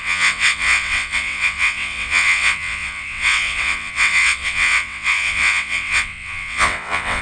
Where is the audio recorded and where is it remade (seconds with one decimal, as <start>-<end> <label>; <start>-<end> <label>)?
0.0-7.2 remade